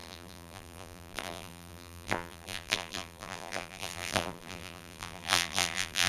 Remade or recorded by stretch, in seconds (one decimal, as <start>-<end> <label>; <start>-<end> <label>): 0.0-6.1 remade